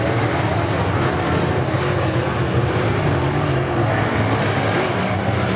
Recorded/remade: recorded